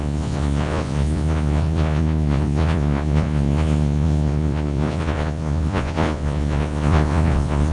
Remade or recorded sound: remade